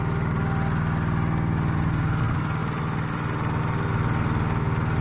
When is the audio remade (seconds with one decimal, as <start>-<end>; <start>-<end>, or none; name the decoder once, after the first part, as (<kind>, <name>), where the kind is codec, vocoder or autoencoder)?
none